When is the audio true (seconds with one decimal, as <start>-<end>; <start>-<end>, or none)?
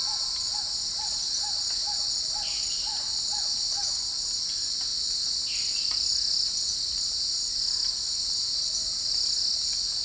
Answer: 0.0-10.0